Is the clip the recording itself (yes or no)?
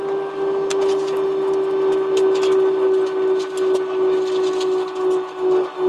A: yes